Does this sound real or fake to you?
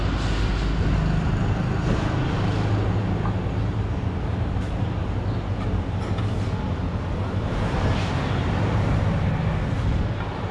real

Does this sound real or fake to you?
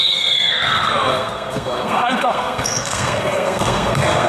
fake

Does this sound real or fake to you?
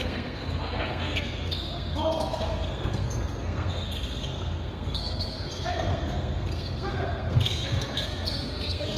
fake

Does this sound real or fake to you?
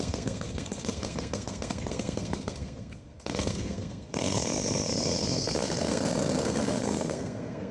fake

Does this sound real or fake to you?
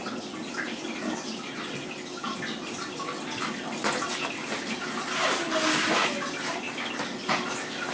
real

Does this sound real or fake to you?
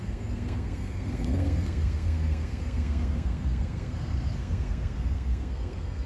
fake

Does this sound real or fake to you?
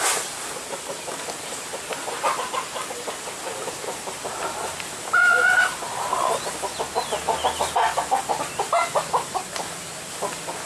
real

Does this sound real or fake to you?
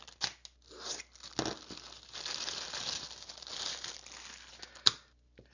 real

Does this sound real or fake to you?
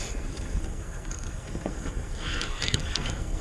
fake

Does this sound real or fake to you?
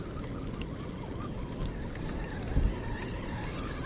real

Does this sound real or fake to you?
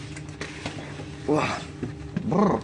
real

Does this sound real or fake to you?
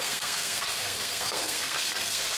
fake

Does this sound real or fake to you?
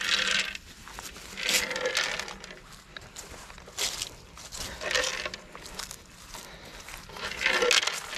real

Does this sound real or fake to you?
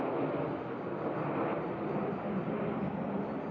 real